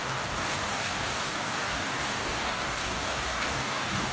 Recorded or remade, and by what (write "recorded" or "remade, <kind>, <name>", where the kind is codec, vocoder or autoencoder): remade, codec, DAC